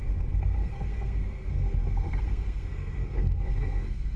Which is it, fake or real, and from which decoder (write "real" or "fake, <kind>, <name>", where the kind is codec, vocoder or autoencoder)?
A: fake, codec, SNAC